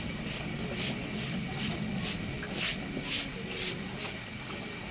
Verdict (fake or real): real